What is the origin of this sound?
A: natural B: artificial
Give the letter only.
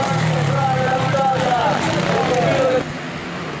A